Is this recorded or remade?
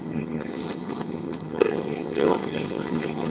remade